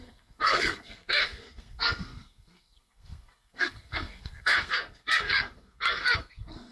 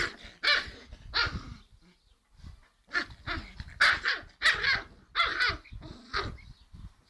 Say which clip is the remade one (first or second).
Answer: first